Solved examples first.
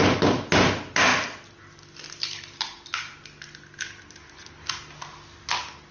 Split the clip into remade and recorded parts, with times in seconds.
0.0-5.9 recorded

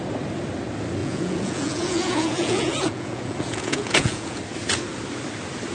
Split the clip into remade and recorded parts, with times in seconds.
0.0-1.0 recorded; 1.0-4.4 remade; 4.4-5.7 recorded

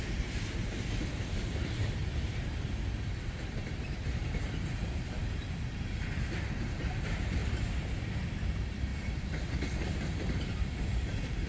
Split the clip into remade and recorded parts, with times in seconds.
0.0-2.0 remade; 2.0-3.5 recorded; 3.5-11.5 remade

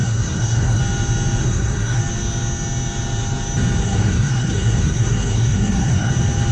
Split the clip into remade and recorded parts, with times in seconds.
0.0-0.8 remade; 0.8-1.4 recorded; 1.4-2.0 remade; 2.0-3.8 recorded; 3.8-6.1 remade; 6.1-6.5 recorded

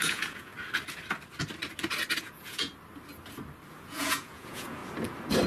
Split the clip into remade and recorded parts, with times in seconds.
0.0-0.5 remade; 0.5-2.3 recorded; 2.3-2.7 remade; 2.7-3.7 recorded; 3.7-4.8 remade; 4.8-5.5 recorded